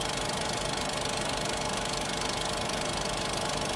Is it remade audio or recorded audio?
recorded